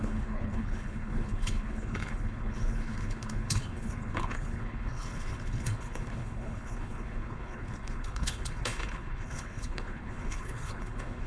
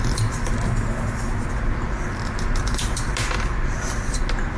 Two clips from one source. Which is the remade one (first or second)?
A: first